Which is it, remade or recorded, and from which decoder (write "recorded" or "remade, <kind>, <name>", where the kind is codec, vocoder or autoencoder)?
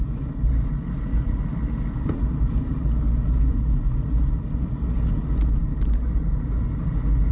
recorded